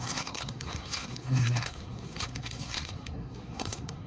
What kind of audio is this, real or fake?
fake